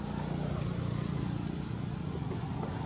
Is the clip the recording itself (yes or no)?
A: yes